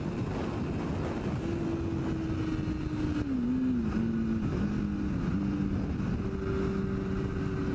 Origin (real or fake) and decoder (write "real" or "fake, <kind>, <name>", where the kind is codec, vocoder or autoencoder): real